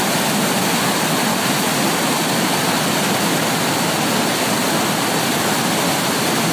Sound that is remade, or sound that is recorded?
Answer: recorded